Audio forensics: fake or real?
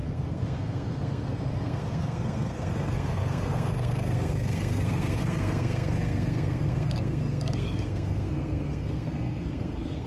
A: fake